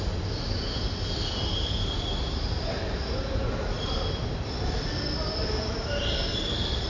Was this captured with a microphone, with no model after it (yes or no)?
yes